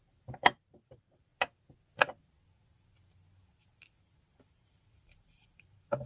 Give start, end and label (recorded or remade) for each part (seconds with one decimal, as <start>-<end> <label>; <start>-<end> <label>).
0.0-1.3 remade; 1.3-4.0 recorded; 4.0-6.1 remade